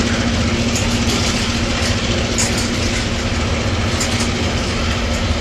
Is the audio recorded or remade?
recorded